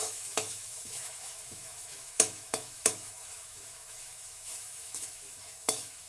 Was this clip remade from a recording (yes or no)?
yes